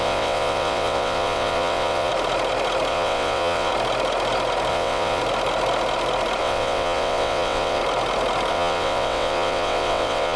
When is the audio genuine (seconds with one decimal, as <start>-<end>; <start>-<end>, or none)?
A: 2.1-2.9; 3.7-4.7; 5.2-6.4; 7.8-8.5